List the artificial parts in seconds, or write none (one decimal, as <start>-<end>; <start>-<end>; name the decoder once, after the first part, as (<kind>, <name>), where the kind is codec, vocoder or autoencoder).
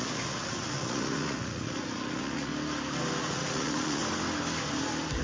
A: 0.0-2.5 (vocoder, Vocos); 3.2-4.0